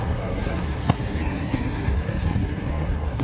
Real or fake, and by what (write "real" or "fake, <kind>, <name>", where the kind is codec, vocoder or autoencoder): fake, codec, SNAC